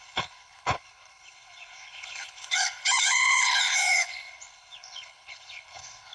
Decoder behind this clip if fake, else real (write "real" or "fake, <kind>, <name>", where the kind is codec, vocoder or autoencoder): fake, codec, HILCodec